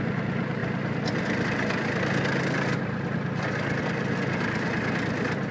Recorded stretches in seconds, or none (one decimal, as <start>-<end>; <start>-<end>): 0.0-5.5

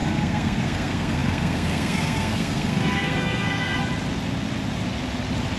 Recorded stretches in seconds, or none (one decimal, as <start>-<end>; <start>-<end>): 3.8-5.6

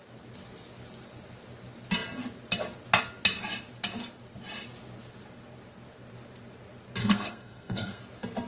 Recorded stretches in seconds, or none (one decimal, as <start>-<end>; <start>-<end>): 0.0-7.0; 8.0-8.5

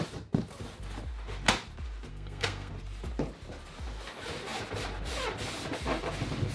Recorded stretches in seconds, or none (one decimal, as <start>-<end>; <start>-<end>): 0.0-2.1; 2.7-6.5

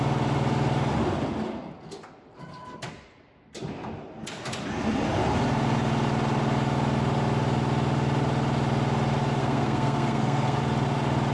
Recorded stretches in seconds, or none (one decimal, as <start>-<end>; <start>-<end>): 0.0-9.4; 10.6-11.3

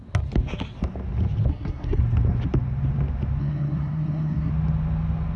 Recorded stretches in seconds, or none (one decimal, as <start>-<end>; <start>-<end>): 0.0-1.5; 2.0-3.4; 4.5-5.4

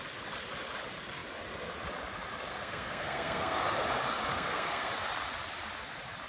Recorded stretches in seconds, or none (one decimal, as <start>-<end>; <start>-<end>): 0.0-2.5; 3.6-4.3; 4.9-6.3

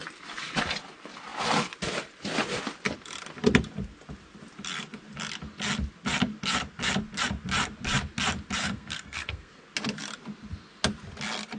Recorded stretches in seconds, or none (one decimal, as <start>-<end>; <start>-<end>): 0.0-8.6; 9.6-11.6